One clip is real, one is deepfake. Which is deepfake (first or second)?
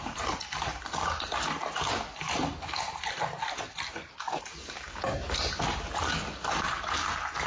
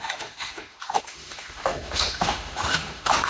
second